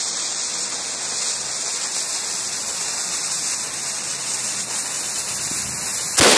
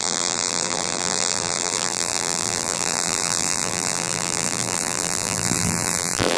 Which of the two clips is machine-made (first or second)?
second